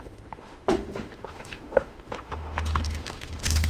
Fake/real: fake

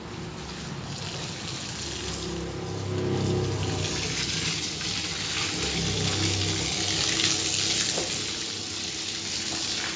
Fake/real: real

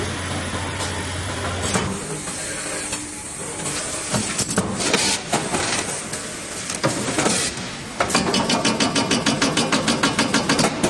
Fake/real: real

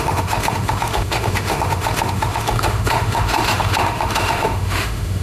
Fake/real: fake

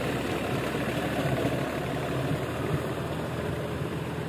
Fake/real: real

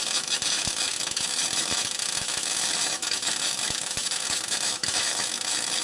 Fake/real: fake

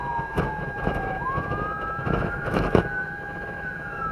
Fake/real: fake